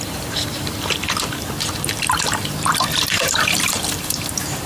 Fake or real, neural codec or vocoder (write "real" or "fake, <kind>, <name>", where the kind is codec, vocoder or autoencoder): fake, vocoder, BigVGAN v2